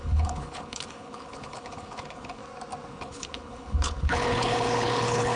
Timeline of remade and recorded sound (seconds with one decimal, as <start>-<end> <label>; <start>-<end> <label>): 0.0-2.4 remade; 2.4-2.9 recorded; 2.9-5.4 remade